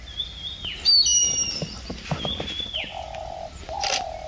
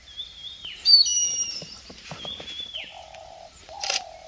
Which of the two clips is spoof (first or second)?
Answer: second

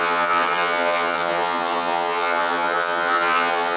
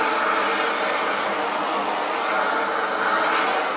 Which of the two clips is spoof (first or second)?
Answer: first